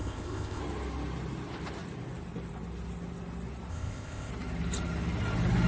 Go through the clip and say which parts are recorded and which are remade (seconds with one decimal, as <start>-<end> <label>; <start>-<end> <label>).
0.0-0.6 remade; 0.6-3.7 recorded; 3.7-4.3 remade; 4.3-5.7 recorded